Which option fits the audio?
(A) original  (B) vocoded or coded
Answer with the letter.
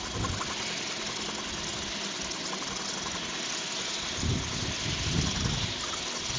A